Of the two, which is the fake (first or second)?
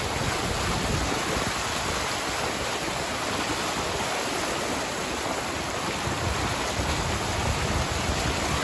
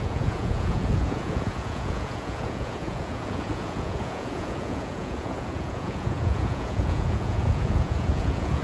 second